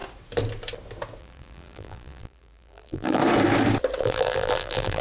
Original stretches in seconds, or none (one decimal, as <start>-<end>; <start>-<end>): 0.0-1.2; 3.2-4.0